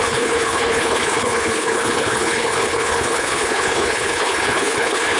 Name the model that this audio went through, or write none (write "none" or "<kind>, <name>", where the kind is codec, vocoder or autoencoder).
codec, HILCodec